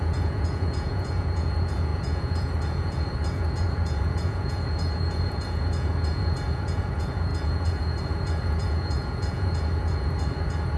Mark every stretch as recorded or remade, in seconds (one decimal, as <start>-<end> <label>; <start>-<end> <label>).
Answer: 0.0-10.8 remade